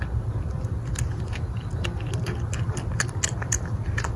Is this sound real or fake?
real